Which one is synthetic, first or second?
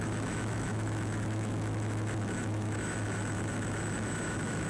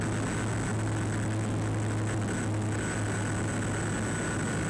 first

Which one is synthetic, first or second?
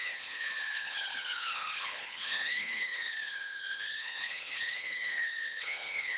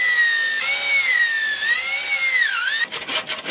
first